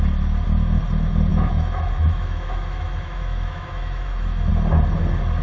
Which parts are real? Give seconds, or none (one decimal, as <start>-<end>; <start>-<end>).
0.0-1.3; 4.5-5.4